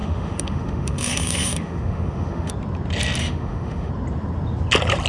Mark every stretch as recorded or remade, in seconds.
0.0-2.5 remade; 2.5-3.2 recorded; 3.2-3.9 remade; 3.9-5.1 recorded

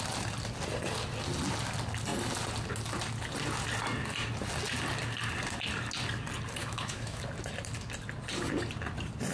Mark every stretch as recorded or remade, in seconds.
0.0-6.6 recorded; 6.6-7.2 remade; 7.2-9.3 recorded

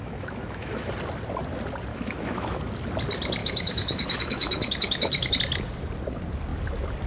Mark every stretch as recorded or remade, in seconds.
0.0-0.9 remade; 0.9-1.9 recorded; 1.9-2.6 remade; 2.6-3.4 recorded; 3.4-5.4 remade; 5.4-7.1 recorded

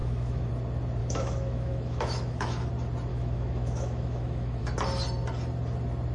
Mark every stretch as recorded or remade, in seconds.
0.0-0.5 remade; 0.5-1.0 recorded; 1.0-2.7 remade; 2.7-3.1 recorded; 3.1-4.6 remade; 4.6-6.1 recorded